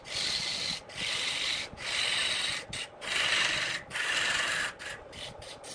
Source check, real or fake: real